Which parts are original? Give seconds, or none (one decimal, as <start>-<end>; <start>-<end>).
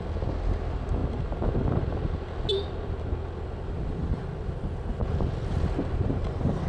0.0-6.7